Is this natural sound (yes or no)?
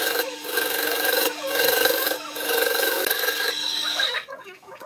no